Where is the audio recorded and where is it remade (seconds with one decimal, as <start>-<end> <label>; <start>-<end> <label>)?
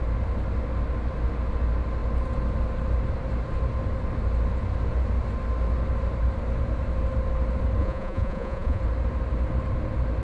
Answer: 0.0-7.8 recorded; 7.8-8.8 remade; 8.8-10.2 recorded